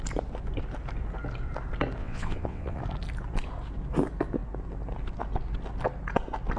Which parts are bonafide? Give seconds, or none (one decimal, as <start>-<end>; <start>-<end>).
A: 0.0-2.0; 2.8-6.6